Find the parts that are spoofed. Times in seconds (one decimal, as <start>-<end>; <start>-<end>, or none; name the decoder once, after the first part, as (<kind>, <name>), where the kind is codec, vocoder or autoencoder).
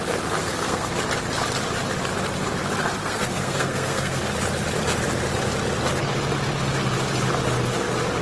0.4-0.9 (codec, SNAC); 3.0-4.2